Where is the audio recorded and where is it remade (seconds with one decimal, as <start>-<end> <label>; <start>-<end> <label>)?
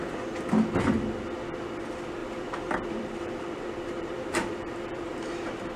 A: 0.0-2.2 recorded; 2.2-5.8 remade